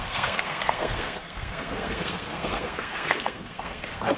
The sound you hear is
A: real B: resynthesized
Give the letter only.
B